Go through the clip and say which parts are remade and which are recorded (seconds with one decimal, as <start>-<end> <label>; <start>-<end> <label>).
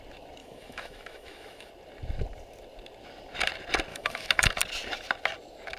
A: 0.0-0.4 recorded; 0.4-1.7 remade; 1.7-3.9 recorded; 3.9-4.5 remade; 4.5-5.8 recorded